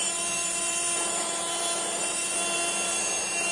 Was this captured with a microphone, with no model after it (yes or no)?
no